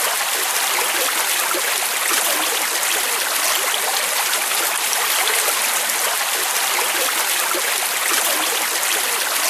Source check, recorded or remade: recorded